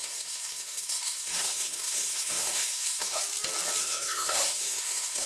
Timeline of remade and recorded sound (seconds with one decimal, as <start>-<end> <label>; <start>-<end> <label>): 0.0-3.2 remade; 3.2-3.8 recorded; 3.8-5.3 remade